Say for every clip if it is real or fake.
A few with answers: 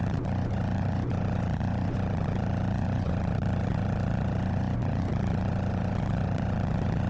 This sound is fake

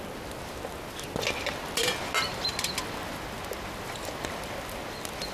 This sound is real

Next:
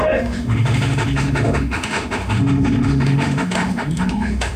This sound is fake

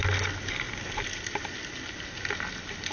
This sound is real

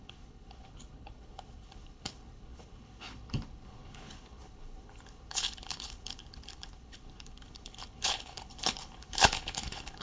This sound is fake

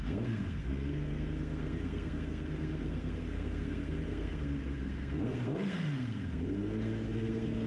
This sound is fake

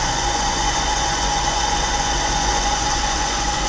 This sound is fake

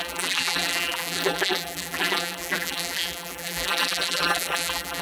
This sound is fake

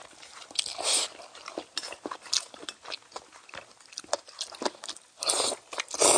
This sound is real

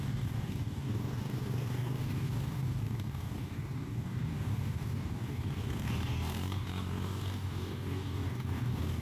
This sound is fake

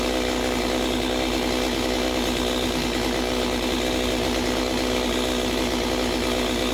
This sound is real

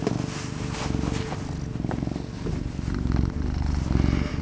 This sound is real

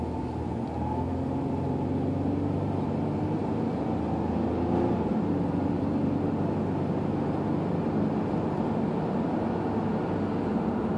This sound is real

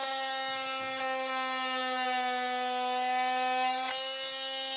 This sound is real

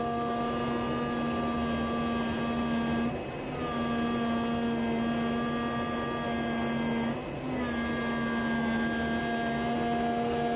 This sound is real